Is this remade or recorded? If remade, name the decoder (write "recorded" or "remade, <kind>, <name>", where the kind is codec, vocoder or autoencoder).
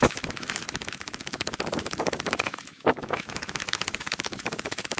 remade, autoencoder, DAC-VAE